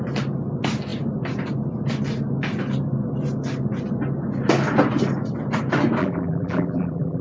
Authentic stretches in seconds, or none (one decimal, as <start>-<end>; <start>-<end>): 0.0-6.0